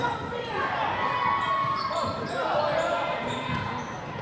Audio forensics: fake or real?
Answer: real